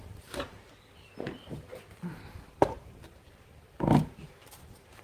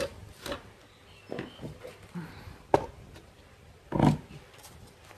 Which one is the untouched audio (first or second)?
second